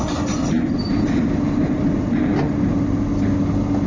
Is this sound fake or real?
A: real